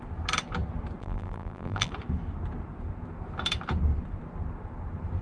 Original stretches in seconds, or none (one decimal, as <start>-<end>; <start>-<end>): 0.0-1.0; 1.9-5.2